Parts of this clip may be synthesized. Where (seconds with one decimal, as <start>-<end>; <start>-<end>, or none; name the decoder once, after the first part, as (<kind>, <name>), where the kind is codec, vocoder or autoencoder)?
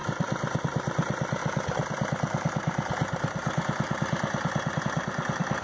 none